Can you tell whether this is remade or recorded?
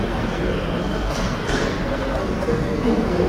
remade